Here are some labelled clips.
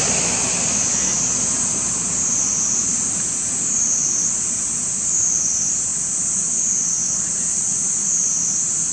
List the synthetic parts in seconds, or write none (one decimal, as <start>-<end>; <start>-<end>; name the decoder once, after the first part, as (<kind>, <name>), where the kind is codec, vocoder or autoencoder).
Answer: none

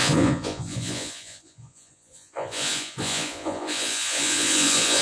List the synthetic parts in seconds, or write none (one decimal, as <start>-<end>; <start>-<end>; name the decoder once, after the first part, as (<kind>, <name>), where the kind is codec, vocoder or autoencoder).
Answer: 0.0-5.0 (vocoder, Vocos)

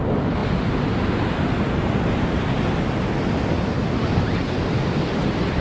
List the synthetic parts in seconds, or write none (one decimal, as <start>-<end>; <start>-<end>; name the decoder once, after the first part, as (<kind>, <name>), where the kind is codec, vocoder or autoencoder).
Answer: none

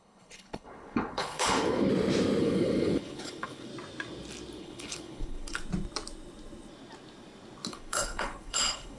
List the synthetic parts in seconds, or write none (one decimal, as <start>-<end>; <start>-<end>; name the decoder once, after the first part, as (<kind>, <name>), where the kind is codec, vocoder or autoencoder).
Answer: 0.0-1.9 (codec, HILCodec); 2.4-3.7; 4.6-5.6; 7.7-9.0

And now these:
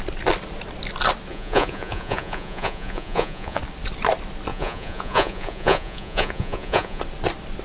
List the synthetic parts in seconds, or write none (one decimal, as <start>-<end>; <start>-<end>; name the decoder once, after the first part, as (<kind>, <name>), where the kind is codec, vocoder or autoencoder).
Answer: 1.3-3.6 (vocoder, Vocos); 4.5-7.0

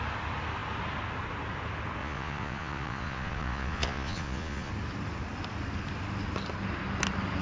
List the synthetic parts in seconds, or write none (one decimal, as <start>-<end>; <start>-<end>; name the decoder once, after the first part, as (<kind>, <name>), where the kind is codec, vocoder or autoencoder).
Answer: 2.0-4.7 (vocoder, Vocos)